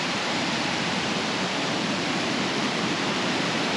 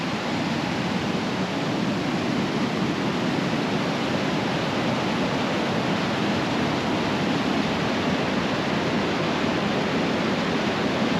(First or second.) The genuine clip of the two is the second